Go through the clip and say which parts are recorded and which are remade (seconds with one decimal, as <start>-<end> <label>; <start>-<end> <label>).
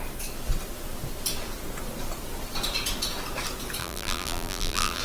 0.0-3.8 recorded; 3.8-5.0 remade